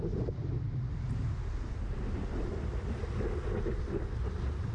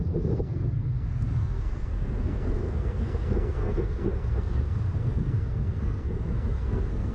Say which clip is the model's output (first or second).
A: second